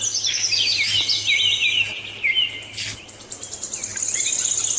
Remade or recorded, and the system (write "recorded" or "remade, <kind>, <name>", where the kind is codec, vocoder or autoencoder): recorded